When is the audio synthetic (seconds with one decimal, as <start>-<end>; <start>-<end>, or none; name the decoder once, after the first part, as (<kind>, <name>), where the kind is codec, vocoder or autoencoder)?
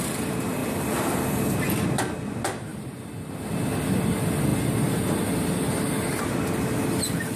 none